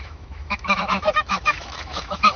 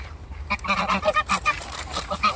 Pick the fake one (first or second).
first